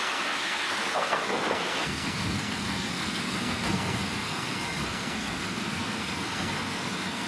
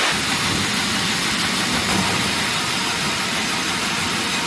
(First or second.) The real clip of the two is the second